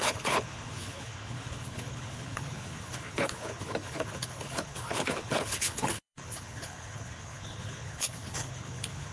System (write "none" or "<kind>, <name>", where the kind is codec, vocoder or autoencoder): codec, HILCodec